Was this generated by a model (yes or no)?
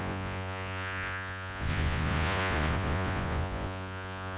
yes